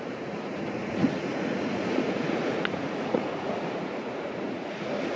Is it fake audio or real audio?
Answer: fake